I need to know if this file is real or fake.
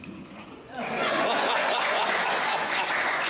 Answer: fake